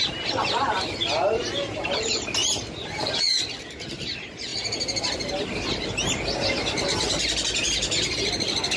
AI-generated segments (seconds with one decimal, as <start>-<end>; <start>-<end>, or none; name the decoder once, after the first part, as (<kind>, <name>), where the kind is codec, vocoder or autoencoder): none